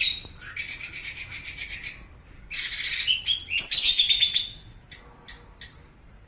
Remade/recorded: recorded